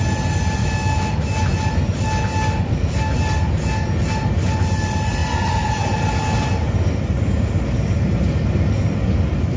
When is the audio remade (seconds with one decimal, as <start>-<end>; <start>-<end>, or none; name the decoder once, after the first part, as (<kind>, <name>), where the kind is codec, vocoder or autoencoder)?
0.6-1.1 (autoencoder, DAC-VAE)